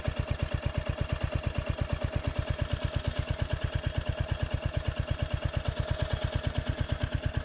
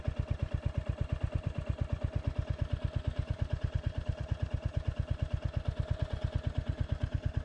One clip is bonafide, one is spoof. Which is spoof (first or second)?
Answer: second